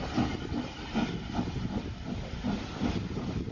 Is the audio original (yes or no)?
yes